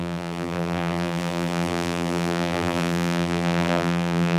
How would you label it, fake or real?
fake